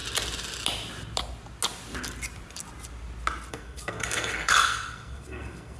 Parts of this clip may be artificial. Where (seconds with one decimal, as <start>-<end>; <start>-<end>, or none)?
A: 3.5-5.8